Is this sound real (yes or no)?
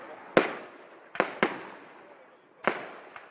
yes